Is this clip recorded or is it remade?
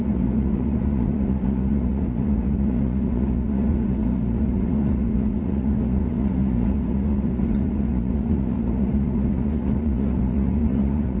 remade